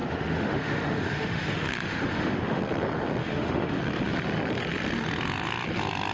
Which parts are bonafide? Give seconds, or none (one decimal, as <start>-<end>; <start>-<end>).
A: 2.6-3.2; 3.8-6.1